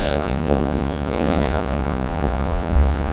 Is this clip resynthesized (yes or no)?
yes